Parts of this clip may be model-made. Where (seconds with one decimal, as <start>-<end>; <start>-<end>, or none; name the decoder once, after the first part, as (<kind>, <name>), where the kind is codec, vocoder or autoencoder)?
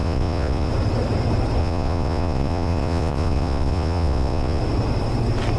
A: 0.0-0.7 (vocoder, Vocos); 1.6-4.6